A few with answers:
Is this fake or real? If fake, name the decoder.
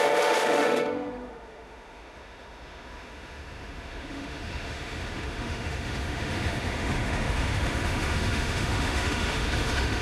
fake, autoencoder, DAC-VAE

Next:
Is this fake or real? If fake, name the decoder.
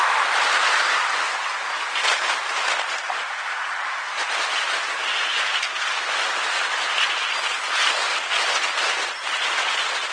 real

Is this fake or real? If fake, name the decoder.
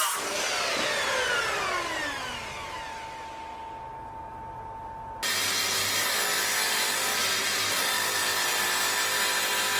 real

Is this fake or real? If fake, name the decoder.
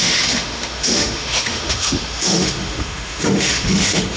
fake, autoencoder, DAC-VAE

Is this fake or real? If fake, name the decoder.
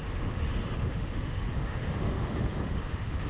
fake, autoencoder, DAC-VAE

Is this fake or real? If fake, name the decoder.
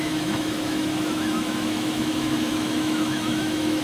fake, autoencoder, DAC-VAE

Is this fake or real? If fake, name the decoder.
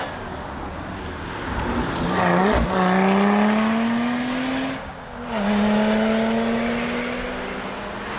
real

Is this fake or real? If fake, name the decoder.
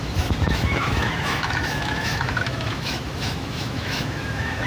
fake, autoencoder, DAC-VAE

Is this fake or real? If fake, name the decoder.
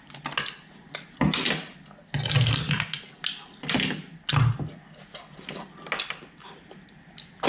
real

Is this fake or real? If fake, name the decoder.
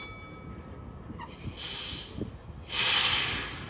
real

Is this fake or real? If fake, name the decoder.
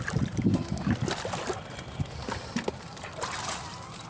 real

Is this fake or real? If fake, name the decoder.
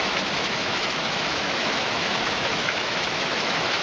fake, autoencoder, DAC-VAE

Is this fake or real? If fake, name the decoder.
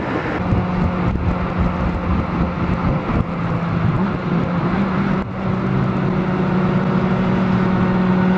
real